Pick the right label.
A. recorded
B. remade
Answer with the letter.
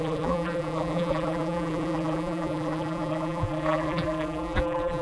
B